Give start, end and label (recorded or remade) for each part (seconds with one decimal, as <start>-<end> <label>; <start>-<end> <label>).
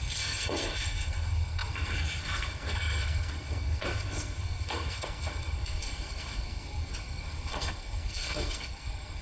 0.0-9.2 remade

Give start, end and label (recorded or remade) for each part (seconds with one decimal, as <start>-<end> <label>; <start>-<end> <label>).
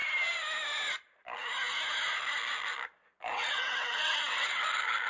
0.0-3.3 recorded; 3.3-4.6 remade; 4.6-5.1 recorded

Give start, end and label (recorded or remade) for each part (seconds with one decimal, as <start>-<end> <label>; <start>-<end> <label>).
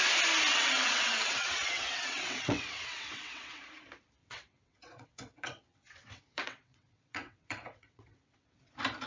0.0-0.5 recorded; 0.5-3.6 remade; 3.6-4.2 recorded; 4.2-8.7 remade; 8.7-9.1 recorded